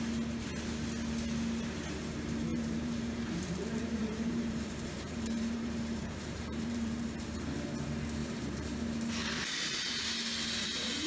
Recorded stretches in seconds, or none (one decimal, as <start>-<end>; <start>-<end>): 0.0-2.5; 7.0-8.2; 9.9-11.1